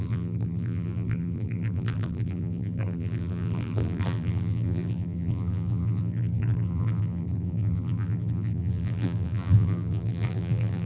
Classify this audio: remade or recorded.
remade